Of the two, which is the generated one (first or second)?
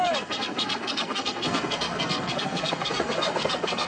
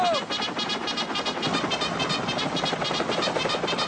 first